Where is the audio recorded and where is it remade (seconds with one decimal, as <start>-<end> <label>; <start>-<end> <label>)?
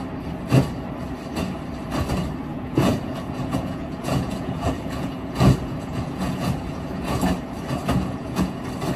0.0-2.5 recorded; 2.5-7.2 remade; 7.2-7.8 recorded; 7.8-8.6 remade; 8.6-9.0 recorded